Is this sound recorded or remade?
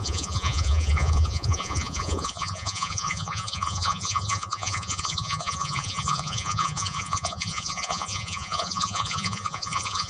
remade